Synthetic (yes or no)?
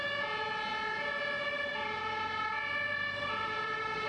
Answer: no